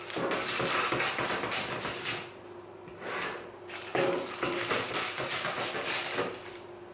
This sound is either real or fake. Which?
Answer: real